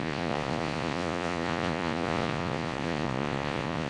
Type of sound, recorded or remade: remade